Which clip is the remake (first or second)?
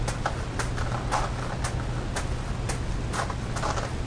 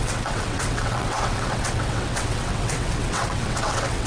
second